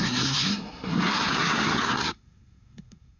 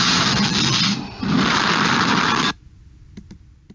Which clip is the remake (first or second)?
first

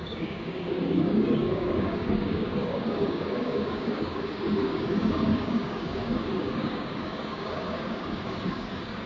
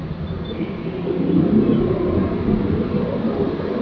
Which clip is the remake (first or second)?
first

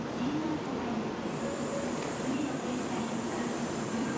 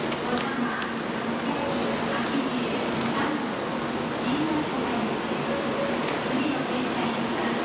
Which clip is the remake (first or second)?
first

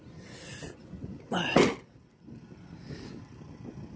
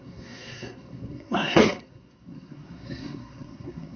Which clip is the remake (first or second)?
second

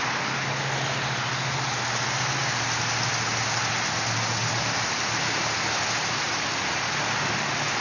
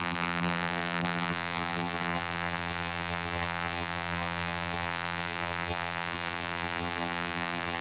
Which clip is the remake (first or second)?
second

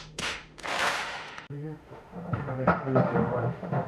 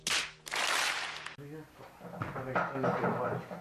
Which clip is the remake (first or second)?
first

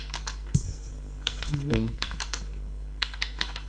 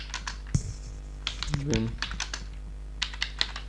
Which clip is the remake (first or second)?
first